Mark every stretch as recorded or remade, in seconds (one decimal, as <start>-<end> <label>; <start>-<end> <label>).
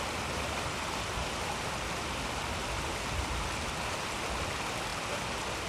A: 0.0-5.7 recorded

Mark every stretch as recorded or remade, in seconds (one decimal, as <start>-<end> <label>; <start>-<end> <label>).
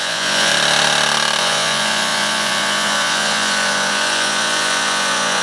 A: 0.0-0.5 remade; 0.5-1.4 recorded; 1.4-5.4 remade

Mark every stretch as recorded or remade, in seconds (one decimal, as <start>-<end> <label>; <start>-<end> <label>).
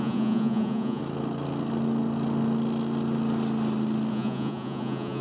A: 0.0-1.0 remade; 1.0-4.1 recorded; 4.1-5.2 remade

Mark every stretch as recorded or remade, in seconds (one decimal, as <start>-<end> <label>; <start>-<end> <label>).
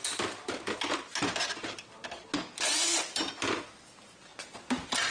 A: 0.0-5.1 recorded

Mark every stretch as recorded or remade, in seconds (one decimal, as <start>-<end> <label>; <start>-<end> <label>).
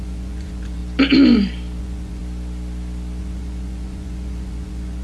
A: 0.0-0.8 remade; 0.8-1.8 recorded; 1.8-2.2 remade; 2.2-3.2 recorded; 3.2-5.0 remade